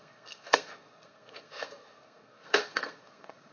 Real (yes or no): no